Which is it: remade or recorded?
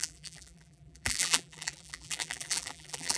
remade